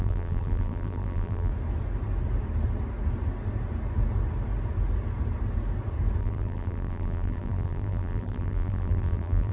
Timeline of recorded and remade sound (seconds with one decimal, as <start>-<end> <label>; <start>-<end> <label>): 0.0-1.5 remade; 1.5-6.2 recorded; 6.2-9.5 remade